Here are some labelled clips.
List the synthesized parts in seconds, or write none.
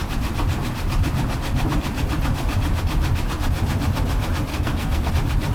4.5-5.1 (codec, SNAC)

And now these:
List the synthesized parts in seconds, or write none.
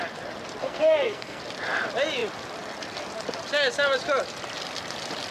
0.6-1.4 (codec, SNAC)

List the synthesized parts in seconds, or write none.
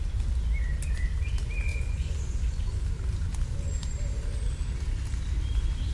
1.7-2.8 (vocoder, Vocos)